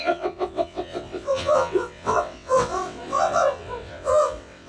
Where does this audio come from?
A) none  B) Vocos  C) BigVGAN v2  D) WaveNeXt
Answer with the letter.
D